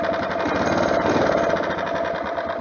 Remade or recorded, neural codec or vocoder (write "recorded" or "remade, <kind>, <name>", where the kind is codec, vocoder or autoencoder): recorded